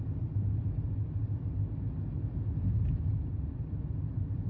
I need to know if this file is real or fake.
fake